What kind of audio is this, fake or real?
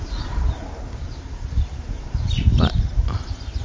real